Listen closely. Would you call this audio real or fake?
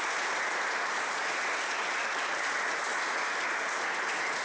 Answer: real